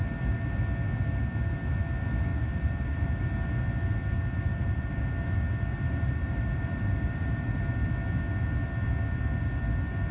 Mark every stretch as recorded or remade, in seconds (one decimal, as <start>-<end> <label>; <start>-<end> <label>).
0.0-2.3 recorded; 2.3-3.2 remade; 3.2-4.5 recorded; 4.5-5.0 remade; 5.0-5.7 recorded; 5.7-7.6 remade; 7.6-10.1 recorded